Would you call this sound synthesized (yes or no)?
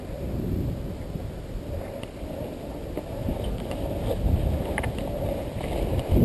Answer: no